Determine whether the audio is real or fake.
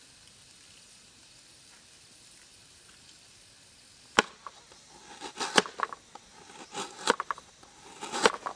real